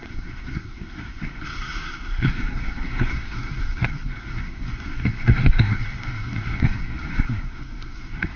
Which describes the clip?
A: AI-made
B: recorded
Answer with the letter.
A